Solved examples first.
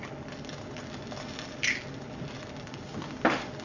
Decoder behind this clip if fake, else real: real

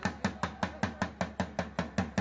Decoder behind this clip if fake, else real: real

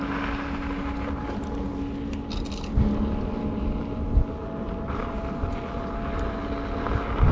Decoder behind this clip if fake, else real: real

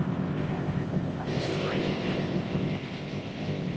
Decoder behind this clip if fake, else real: fake, codec, ZipCodec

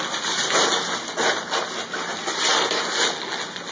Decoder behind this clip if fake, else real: real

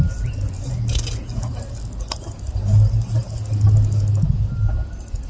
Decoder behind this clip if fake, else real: real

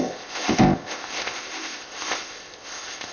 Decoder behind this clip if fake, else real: fake, codec, ZipCodec